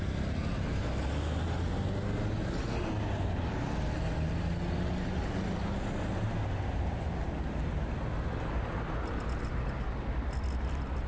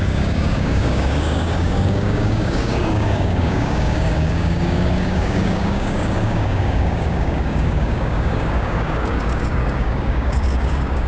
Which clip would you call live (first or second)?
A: first